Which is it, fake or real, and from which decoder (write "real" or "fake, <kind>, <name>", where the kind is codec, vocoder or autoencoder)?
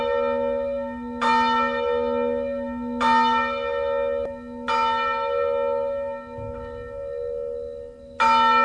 real